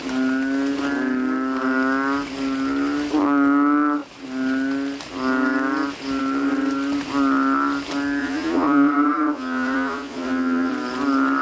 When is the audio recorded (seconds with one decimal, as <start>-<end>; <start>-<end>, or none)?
0.0-8.2; 10.7-11.4